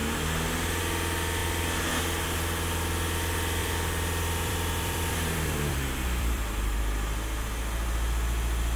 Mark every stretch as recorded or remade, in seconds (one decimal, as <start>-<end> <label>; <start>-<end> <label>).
0.0-3.6 recorded; 3.6-6.8 remade; 6.8-8.8 recorded